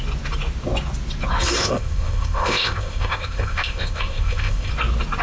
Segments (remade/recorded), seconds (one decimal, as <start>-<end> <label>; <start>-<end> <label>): 0.0-1.6 recorded; 1.6-4.7 remade; 4.7-5.2 recorded